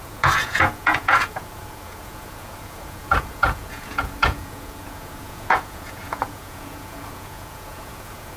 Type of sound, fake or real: fake